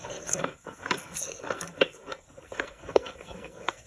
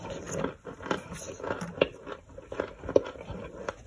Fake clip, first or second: first